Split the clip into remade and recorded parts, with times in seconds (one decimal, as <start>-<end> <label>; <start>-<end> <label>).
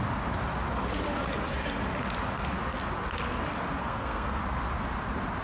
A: 0.0-3.8 recorded; 3.8-4.4 remade; 4.4-5.4 recorded